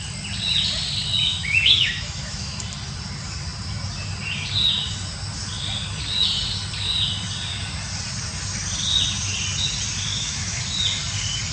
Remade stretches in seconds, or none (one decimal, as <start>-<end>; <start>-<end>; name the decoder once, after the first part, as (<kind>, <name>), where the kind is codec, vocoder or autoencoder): 1.2-2.6 (autoencoder, DAC-VAE); 10.1-10.6